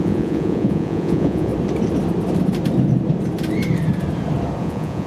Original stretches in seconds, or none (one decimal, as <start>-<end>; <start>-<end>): 1.5-4.6